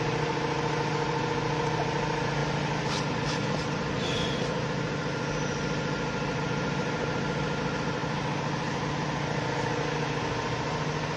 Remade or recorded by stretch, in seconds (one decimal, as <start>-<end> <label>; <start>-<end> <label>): 0.0-11.2 recorded